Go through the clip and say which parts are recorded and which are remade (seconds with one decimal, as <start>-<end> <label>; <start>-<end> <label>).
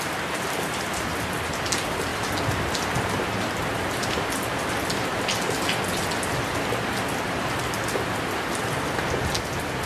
0.0-9.9 recorded